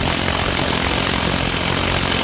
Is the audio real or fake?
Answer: real